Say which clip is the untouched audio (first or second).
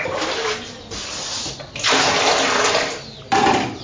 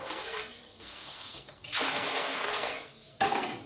first